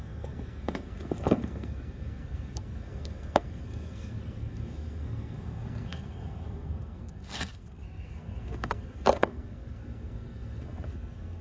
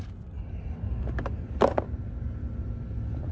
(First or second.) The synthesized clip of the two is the first